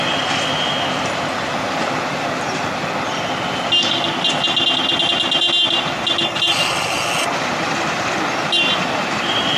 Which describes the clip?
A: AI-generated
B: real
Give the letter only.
B